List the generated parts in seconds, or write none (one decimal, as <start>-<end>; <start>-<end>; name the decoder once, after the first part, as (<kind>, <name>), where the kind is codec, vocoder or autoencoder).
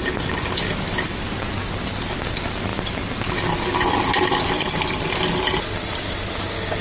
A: none